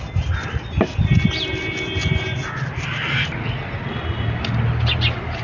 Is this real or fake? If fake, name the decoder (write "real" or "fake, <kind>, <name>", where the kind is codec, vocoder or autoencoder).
real